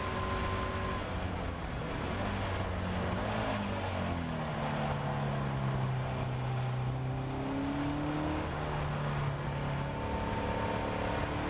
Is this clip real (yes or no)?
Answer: yes